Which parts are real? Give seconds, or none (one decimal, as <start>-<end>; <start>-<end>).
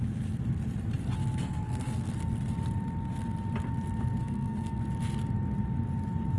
0.0-1.4; 2.1-4.2; 4.8-6.4